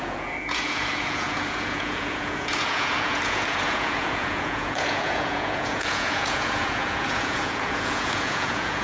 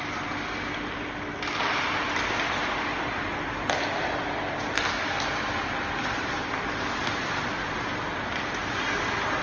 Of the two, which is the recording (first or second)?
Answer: second